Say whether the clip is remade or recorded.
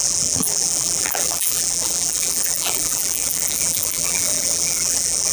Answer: remade